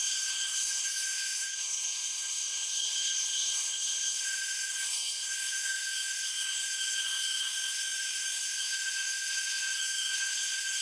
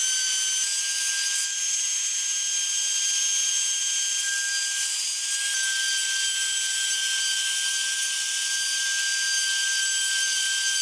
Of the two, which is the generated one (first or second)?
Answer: first